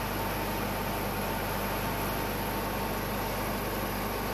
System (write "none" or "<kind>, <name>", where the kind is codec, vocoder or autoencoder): none